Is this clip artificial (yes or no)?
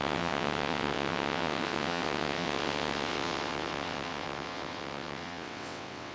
yes